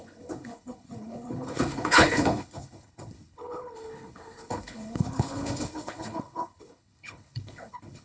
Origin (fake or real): fake